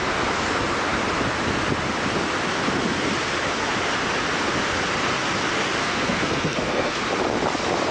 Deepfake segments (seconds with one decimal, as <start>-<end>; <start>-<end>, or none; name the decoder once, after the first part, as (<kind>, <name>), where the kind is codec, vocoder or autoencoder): 5.8-7.0 (codec, SNAC)